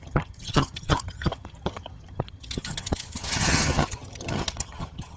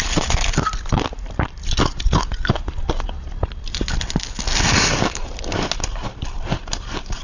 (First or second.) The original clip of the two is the second